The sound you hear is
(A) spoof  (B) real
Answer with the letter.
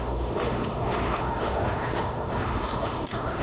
A